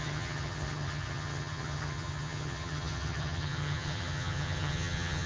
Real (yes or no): no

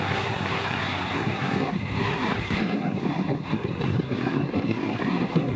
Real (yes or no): no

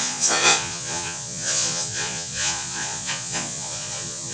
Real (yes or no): no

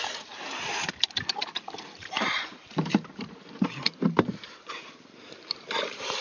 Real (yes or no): no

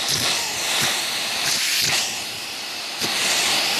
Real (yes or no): yes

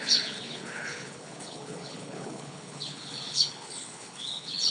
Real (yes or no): no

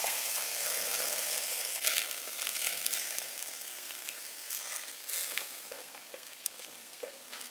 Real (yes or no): no